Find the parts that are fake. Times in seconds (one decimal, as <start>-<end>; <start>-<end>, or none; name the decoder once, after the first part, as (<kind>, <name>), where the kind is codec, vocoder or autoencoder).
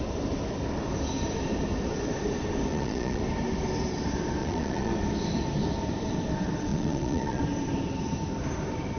2.7-3.2 (vocoder, Vocos); 4.4-4.9; 6.7-7.4